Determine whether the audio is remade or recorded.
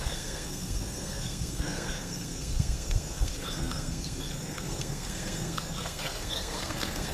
remade